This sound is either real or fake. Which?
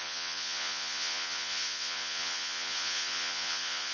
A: fake